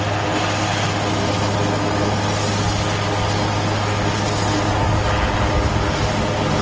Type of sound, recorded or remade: recorded